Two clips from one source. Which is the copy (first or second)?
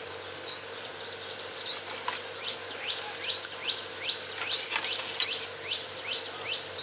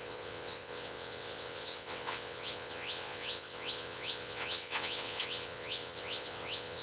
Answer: second